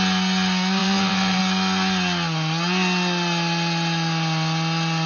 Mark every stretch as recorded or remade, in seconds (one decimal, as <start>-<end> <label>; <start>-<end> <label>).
0.0-0.8 recorded; 0.8-1.4 remade; 1.4-5.1 recorded